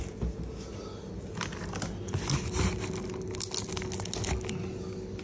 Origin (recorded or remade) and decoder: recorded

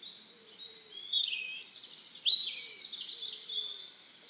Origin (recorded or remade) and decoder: recorded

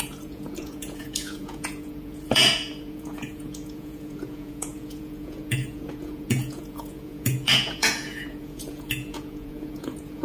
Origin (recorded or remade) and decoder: remade, vocoder, Vocos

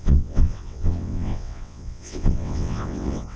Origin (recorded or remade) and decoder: remade, vocoder, WaveNeXt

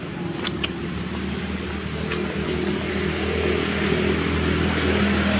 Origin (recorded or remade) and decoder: recorded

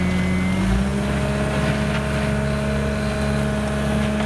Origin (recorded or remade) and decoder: recorded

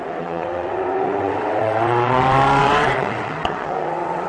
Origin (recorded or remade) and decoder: remade, vocoder, WaveNeXt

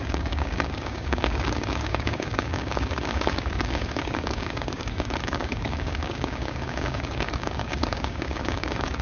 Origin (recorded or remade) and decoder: remade, codec, DAC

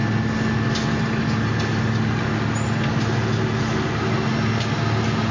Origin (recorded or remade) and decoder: recorded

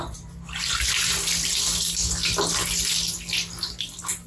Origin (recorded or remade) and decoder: recorded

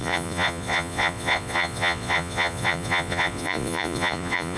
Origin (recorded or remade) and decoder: remade, vocoder, Vocos